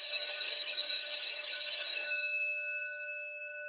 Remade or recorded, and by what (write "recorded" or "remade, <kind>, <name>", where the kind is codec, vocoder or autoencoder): remade, codec, DAC